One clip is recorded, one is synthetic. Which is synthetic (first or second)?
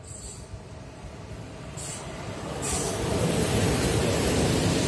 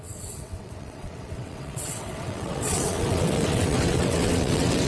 second